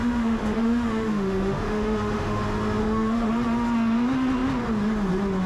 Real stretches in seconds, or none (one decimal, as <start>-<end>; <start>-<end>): 2.4-2.8; 3.3-5.5